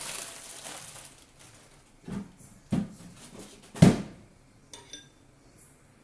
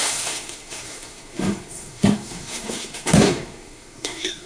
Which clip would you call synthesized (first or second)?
second